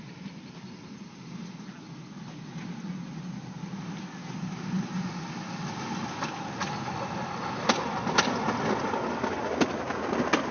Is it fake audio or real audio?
real